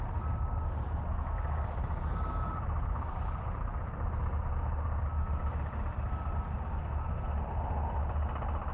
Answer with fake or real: real